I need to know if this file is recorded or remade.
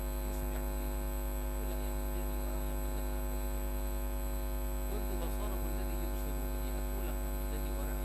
recorded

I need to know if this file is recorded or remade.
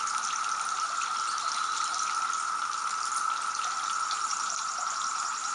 recorded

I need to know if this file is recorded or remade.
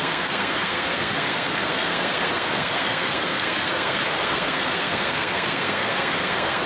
remade